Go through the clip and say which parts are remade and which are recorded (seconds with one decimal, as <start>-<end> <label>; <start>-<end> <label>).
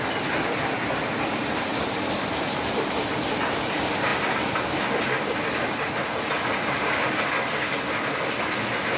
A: 0.0-9.0 recorded